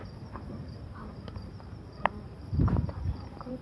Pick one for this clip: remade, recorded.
remade